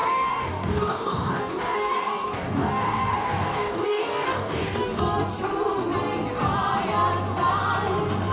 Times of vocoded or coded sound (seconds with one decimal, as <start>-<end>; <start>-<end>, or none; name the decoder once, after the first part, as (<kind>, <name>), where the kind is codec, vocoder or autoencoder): 0.0-5.0 (codec, DAC)